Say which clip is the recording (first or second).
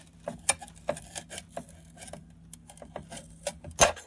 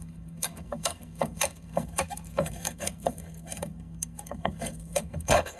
first